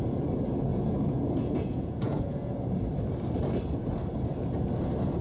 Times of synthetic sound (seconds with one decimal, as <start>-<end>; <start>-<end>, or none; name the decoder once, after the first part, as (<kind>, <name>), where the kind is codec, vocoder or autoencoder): 0.7-2.7 (vocoder, Vocos)